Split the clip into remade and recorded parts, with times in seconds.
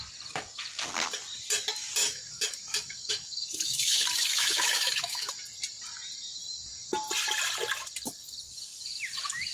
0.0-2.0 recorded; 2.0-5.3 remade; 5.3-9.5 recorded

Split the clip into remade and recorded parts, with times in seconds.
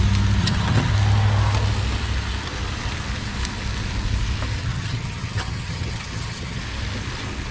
0.0-0.4 recorded; 0.4-0.9 remade; 0.9-4.6 recorded; 4.6-6.6 remade; 6.6-7.5 recorded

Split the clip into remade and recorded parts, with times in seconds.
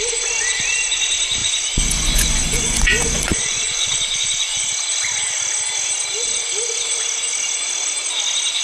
0.0-1.4 recorded; 1.4-4.7 remade; 4.7-8.6 recorded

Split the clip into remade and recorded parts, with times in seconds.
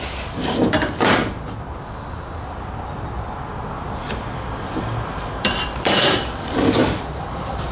0.0-0.6 remade; 0.6-5.2 recorded; 5.2-7.7 remade